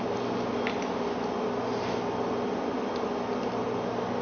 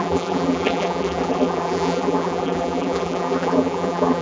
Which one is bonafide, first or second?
first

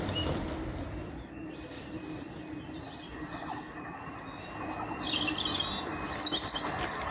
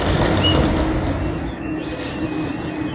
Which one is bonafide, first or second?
second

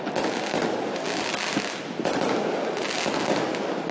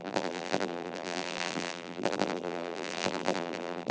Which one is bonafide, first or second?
first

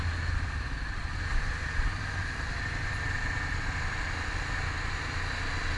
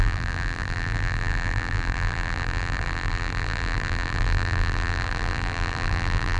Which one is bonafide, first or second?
first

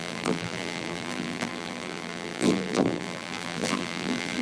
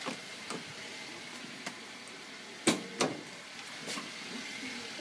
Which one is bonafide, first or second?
second